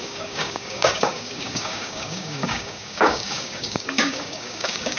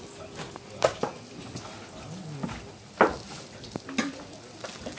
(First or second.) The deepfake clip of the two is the first